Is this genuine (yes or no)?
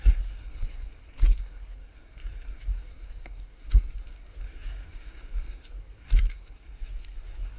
no